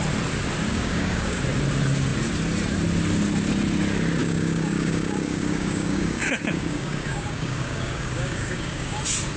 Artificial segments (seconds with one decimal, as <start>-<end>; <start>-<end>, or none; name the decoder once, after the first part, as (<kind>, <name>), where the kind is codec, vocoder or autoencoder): 0.7-1.4 (codec, DAC); 4.2-9.0